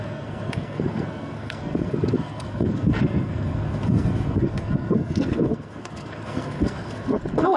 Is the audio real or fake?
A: fake